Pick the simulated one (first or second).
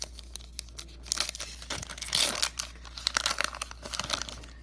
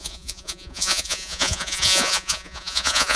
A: second